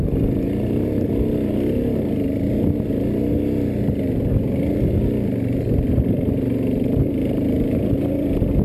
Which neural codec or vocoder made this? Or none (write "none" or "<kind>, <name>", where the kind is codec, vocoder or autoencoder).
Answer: none